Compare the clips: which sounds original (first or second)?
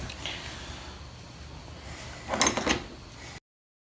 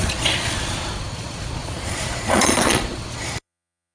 first